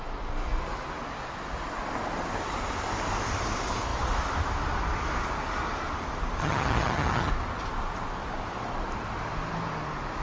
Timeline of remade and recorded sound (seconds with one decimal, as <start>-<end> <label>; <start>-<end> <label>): 0.0-6.4 recorded; 6.4-7.3 remade; 7.3-10.2 recorded